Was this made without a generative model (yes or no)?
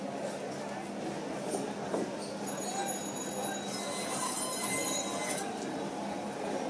yes